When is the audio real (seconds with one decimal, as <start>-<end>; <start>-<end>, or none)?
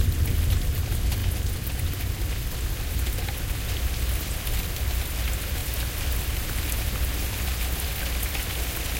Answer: 0.0-9.0